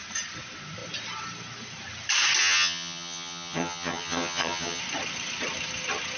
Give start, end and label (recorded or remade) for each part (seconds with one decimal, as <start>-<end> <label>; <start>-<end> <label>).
0.0-2.4 recorded; 2.4-4.8 remade; 4.8-6.2 recorded